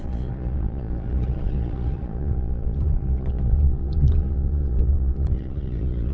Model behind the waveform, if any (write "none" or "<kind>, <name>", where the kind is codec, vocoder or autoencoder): vocoder, Vocos